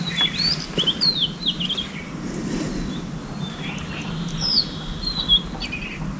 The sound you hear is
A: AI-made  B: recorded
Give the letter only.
B